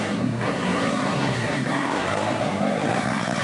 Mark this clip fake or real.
fake